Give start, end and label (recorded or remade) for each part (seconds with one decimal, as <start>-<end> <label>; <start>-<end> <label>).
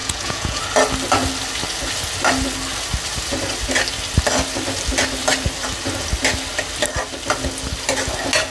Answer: 0.0-0.6 remade; 0.6-8.5 recorded